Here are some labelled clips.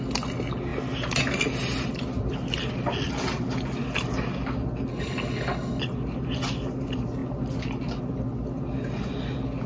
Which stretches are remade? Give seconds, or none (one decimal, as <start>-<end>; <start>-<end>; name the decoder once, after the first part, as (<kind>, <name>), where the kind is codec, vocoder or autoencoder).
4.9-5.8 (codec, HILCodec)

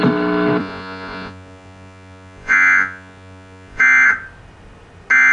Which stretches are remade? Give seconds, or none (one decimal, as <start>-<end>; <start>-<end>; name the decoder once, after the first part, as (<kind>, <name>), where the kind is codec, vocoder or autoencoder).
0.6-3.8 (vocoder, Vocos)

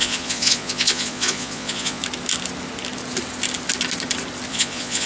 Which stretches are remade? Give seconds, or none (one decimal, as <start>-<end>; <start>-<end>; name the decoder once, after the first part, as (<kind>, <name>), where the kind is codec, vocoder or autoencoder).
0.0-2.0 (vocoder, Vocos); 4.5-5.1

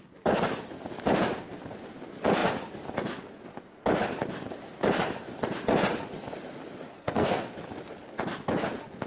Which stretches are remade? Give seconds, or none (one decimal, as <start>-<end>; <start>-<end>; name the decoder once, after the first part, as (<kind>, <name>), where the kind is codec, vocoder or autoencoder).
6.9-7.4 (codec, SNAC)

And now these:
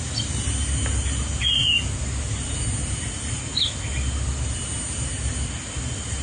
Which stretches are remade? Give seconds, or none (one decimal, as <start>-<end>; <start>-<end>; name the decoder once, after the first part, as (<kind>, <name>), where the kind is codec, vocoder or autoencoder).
none